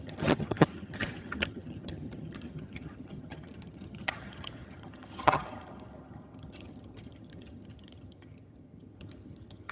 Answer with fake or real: fake